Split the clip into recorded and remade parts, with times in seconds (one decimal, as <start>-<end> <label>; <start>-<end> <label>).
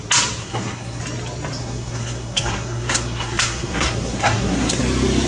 0.0-0.4 recorded; 0.4-1.0 remade; 1.0-1.6 recorded; 1.6-4.8 remade; 4.8-5.3 recorded